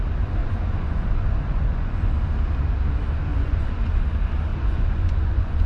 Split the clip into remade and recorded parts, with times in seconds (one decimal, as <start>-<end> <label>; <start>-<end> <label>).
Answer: 0.0-0.4 recorded; 0.4-2.1 remade; 2.1-3.3 recorded; 3.3-4.0 remade; 4.0-4.5 recorded; 4.5-5.7 remade